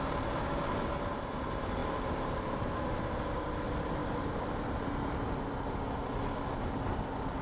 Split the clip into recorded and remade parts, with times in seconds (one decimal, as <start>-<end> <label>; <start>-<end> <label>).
0.0-7.4 recorded